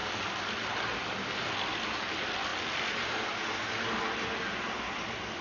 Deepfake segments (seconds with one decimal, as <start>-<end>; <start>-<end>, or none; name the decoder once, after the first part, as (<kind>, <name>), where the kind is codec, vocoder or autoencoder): none

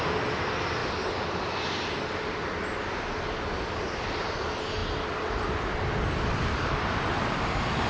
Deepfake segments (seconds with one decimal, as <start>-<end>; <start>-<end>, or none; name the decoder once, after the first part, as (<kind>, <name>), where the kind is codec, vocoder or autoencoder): none

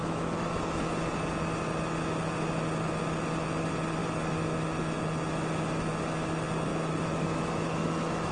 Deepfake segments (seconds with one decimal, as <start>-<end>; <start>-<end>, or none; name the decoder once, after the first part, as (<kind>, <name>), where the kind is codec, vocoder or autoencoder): 0.0-0.8 (autoencoder, DAC-VAE); 6.7-8.3

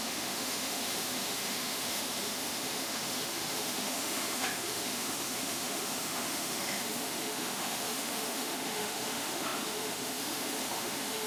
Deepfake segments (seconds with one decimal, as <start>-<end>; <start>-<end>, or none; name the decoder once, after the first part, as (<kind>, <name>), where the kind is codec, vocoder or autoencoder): 0.0-11.3 (autoencoder, DAC-VAE)

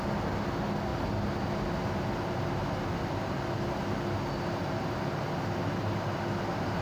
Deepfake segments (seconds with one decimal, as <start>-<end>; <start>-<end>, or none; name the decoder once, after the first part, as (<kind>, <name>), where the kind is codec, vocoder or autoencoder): none